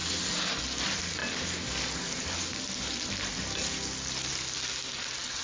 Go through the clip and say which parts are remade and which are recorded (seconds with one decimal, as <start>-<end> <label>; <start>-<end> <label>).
0.0-5.4 recorded